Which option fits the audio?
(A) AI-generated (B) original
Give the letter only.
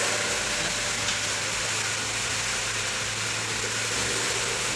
B